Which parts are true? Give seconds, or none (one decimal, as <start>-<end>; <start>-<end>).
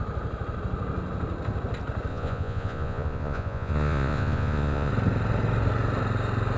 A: 0.0-2.1; 4.9-6.6